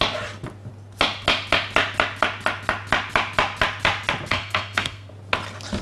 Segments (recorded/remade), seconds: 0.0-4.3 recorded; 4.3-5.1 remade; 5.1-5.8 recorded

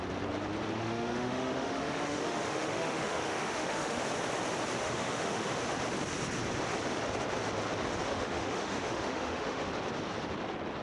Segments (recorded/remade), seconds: 0.0-0.8 recorded; 0.8-4.0 remade; 4.0-4.8 recorded; 4.8-5.6 remade; 5.6-8.1 recorded; 8.1-9.7 remade; 9.7-10.8 recorded

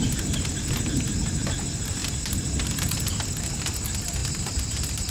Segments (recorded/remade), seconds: 0.0-5.1 recorded

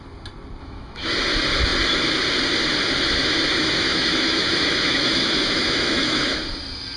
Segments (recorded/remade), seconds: 0.0-0.6 recorded; 0.6-1.1 remade; 1.1-3.2 recorded; 3.2-6.4 remade; 6.4-7.0 recorded